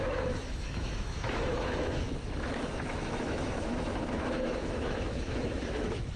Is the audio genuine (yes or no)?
no